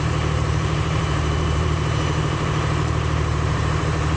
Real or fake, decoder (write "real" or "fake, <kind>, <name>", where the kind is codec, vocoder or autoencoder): fake, vocoder, BigVGAN v2